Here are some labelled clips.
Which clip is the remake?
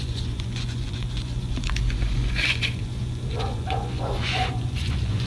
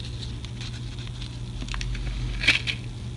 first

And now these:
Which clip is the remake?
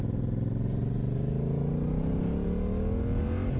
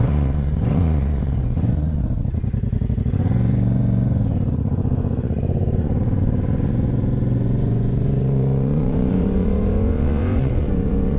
second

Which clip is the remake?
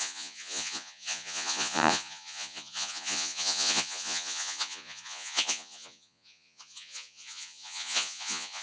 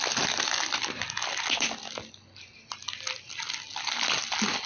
first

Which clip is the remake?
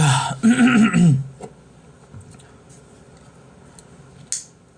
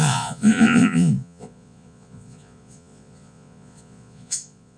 second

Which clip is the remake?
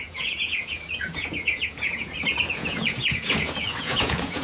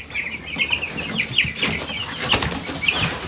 first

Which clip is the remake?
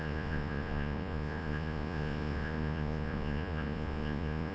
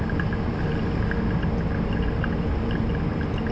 first